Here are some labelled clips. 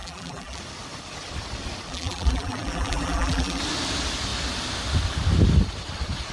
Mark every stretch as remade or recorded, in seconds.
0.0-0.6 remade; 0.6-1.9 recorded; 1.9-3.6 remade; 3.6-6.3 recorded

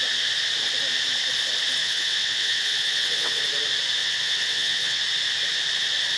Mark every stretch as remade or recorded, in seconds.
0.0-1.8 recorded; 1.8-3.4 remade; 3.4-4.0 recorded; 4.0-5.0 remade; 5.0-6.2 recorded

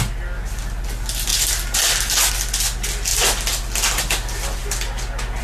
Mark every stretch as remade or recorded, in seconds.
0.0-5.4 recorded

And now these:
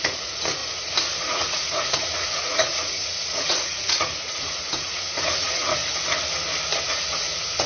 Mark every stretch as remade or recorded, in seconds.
0.0-0.6 remade; 0.6-1.2 recorded; 1.2-5.8 remade; 5.8-6.8 recorded; 6.8-7.7 remade